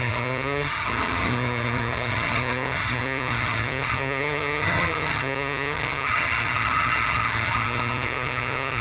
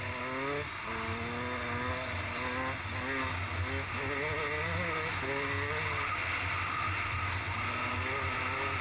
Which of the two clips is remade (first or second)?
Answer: first